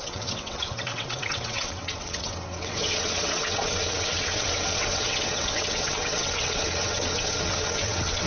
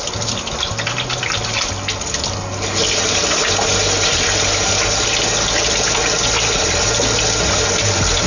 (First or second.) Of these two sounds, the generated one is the first